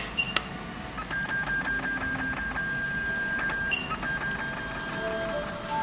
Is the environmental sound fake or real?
real